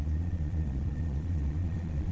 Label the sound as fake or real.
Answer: fake